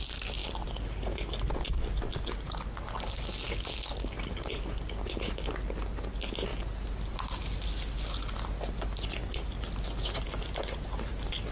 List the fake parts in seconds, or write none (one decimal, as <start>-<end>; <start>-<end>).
none